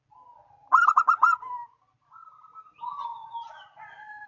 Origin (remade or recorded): recorded